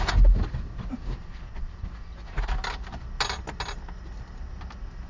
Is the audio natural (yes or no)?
yes